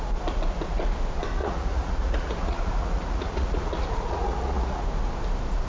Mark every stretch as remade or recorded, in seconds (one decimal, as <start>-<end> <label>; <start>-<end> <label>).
0.0-1.4 recorded; 1.4-4.8 remade; 4.8-5.7 recorded